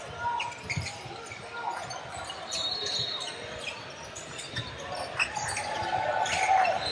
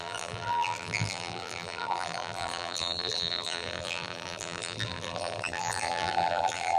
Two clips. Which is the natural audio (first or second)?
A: first